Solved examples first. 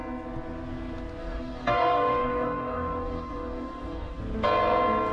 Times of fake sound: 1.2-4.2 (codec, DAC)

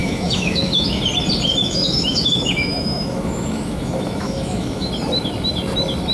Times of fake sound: 0.0-1.0 (autoencoder, DAC-VAE); 1.6-4.9